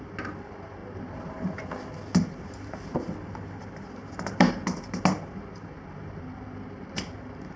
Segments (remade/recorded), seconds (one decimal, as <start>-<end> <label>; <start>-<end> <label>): 0.0-7.6 recorded